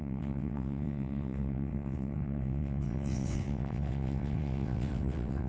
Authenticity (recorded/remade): remade